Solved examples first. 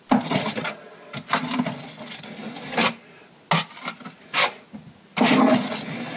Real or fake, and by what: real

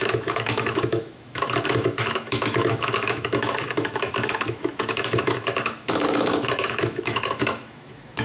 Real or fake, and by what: fake, autoencoder, DAC-VAE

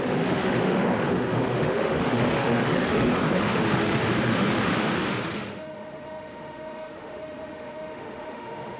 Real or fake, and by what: fake, autoencoder, DAC-VAE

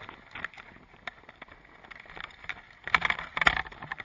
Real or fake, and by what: real